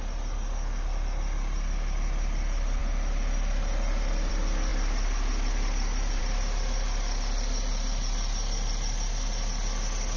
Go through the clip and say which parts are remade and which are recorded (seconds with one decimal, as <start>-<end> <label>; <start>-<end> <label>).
0.0-10.2 recorded